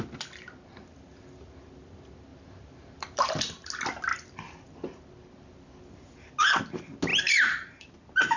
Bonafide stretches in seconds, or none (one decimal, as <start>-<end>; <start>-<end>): 0.0-2.3; 3.3-7.1; 7.9-8.4

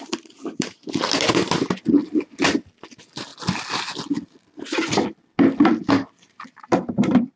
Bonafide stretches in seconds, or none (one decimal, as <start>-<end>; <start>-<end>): 2.0-2.9; 3.3-5.9

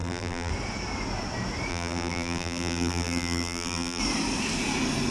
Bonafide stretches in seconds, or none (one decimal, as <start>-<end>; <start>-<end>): 0.5-1.7; 4.0-5.1

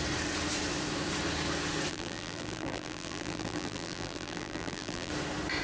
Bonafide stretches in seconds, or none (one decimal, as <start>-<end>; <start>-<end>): 0.0-1.9; 5.1-5.6

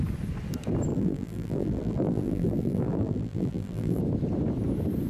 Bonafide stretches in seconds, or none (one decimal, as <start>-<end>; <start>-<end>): 0.0-0.9; 4.0-5.1

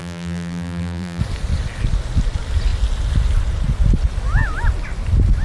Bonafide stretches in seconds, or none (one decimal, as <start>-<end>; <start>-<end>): 1.2-5.4

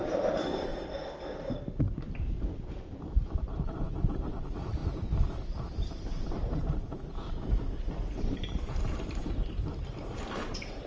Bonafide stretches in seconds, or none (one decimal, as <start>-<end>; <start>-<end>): 0.7-2.1; 4.8-5.4